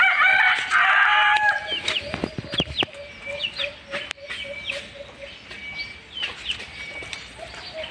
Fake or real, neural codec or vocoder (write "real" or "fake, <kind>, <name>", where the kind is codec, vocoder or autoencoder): real